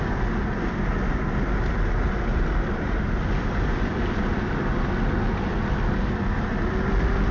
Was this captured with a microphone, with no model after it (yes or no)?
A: yes